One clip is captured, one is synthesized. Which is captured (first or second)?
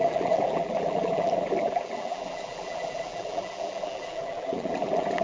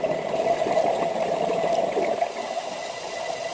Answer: second